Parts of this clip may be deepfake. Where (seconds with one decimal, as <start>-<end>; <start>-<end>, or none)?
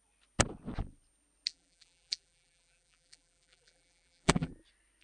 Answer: 1.5-4.5